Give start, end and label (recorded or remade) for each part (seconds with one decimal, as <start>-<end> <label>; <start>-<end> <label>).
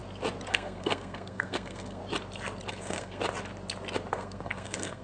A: 0.0-0.5 recorded; 0.5-2.0 remade; 2.0-2.7 recorded; 2.7-3.2 remade; 3.2-4.1 recorded; 4.1-5.0 remade